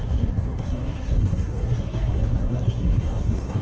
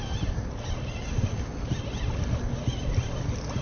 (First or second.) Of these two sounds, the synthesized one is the first